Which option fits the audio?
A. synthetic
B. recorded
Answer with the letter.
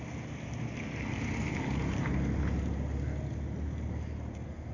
B